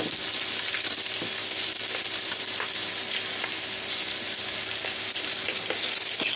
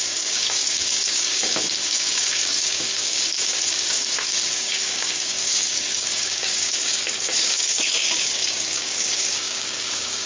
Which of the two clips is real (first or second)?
first